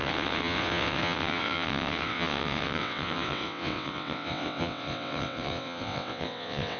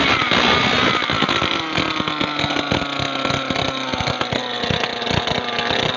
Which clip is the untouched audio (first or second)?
second